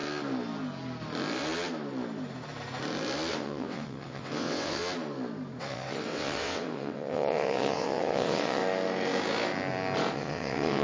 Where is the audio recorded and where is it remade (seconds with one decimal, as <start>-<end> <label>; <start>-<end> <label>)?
0.0-3.3 recorded; 3.3-4.8 remade; 4.8-5.6 recorded; 5.6-8.6 remade; 8.6-10.1 recorded; 10.1-10.8 remade